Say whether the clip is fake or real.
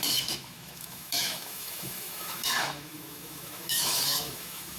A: fake